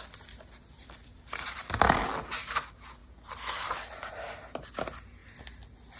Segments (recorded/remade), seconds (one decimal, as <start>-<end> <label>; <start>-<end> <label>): 0.0-0.8 recorded; 0.8-1.8 remade; 1.8-3.0 recorded; 3.0-4.1 remade; 4.1-6.0 recorded